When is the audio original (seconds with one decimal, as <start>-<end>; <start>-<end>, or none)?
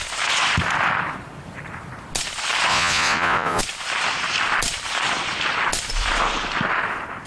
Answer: 0.0-2.7; 3.6-7.3